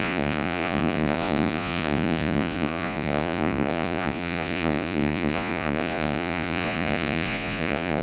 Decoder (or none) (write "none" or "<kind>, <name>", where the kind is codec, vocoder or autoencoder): vocoder, Vocos